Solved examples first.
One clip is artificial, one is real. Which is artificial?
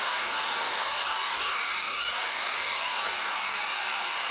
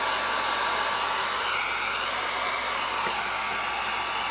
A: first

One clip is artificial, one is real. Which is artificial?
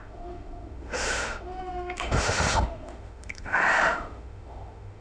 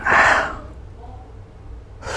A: first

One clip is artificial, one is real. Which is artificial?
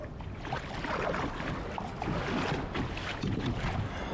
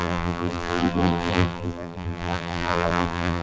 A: second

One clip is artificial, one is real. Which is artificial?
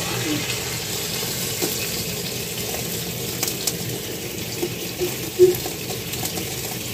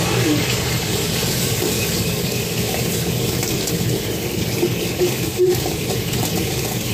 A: second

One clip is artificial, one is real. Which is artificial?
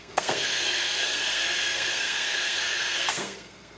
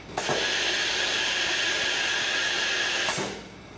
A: first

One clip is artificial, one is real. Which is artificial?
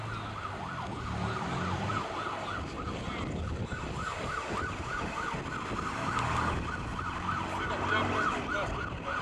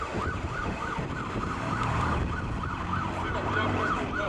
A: second